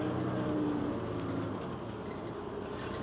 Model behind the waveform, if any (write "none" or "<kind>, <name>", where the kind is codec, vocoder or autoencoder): none